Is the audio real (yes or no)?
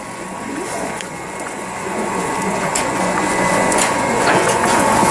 no